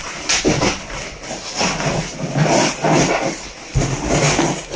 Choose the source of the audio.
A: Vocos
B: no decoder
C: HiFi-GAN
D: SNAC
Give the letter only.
B